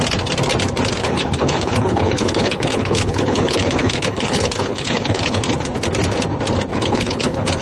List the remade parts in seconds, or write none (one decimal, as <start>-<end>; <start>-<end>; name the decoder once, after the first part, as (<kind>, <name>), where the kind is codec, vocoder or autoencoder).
1.0-5.4 (codec, HILCodec); 6.7-7.6